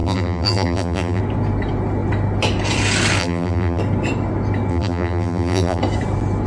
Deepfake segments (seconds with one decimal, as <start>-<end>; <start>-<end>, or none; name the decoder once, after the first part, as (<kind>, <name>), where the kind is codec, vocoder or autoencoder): 0.0-1.2 (vocoder, BigVGAN v2); 3.2-3.8; 4.7-5.8